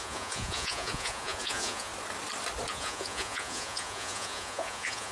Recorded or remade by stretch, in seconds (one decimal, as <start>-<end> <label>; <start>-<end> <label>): 0.0-1.9 remade; 1.9-2.7 recorded; 2.7-5.1 remade